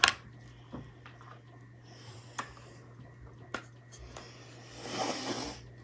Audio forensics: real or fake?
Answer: real